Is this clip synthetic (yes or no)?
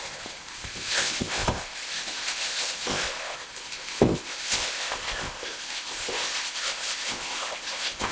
yes